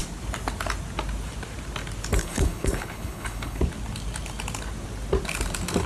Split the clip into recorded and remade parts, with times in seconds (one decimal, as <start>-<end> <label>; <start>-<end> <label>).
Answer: 0.0-2.2 recorded; 2.2-3.6 remade; 3.6-5.9 recorded